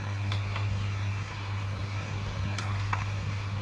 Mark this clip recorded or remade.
remade